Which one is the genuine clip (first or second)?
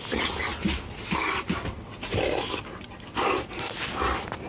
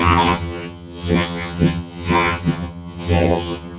first